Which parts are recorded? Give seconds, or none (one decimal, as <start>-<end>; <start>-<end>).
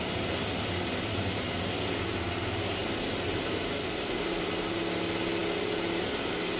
0.0-6.6